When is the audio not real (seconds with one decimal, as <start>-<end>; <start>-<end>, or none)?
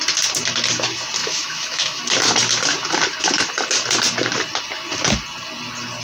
1.2-2.0